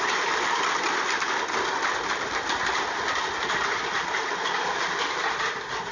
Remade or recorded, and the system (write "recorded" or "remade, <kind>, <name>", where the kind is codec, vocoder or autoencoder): remade, vocoder, BigVGAN v2